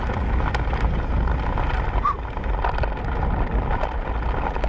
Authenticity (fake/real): real